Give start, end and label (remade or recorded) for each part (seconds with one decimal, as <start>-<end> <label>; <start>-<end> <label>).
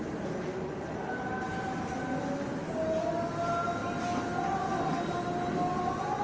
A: 0.0-6.2 recorded